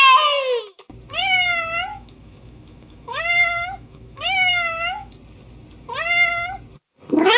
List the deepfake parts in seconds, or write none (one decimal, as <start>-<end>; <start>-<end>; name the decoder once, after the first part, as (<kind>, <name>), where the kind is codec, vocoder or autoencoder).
1.9-5.1 (autoencoder, DAC-VAE)

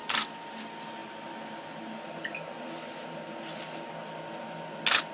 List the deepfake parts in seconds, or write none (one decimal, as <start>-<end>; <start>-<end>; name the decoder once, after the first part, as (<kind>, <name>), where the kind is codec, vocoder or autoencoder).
0.0-0.6 (vocoder, BigVGAN v2); 1.0-4.1

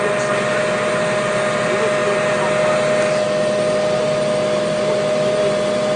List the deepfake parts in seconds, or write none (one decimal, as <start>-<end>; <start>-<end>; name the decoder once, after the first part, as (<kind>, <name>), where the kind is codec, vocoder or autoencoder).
none

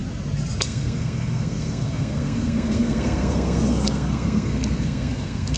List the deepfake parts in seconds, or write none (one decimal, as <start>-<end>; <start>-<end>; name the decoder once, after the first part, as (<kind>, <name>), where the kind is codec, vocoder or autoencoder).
0.6-5.6 (codec, SNAC)